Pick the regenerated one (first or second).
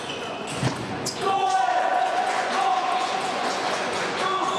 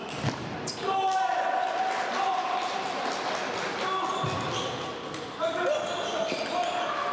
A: first